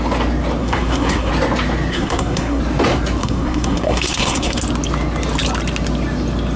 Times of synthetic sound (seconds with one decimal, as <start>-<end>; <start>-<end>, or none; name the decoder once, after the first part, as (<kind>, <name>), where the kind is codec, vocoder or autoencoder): 0.6-1.3 (codec, SNAC); 1.9-2.6; 3.2-4.6